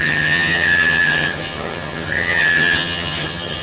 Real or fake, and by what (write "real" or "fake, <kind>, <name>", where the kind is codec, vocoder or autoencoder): fake, vocoder, HiFi-GAN